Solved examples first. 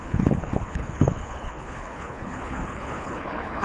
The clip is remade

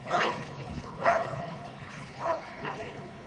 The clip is remade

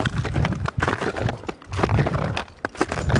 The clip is recorded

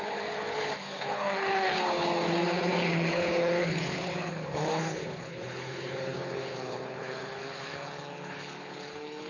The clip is remade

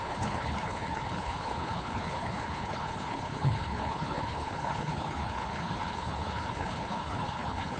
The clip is remade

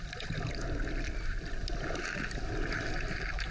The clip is recorded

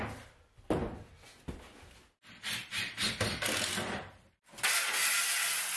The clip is recorded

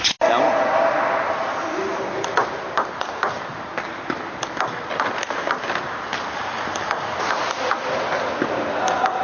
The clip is recorded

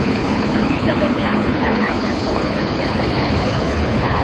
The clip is remade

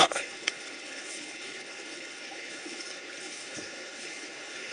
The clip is remade